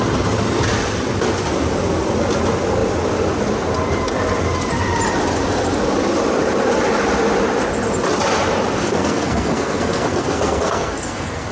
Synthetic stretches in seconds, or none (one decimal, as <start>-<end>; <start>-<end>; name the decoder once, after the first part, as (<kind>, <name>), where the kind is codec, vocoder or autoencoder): 8.8-11.5 (codec, SNAC)